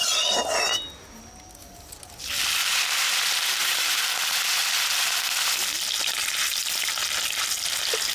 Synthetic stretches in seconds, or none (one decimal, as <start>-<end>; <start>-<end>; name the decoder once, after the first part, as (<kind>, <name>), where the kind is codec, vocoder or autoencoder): 2.6-4.0 (vocoder, BigVGAN v2)